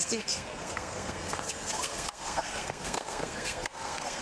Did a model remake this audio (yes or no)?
yes